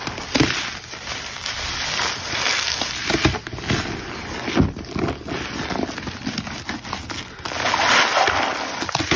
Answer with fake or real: real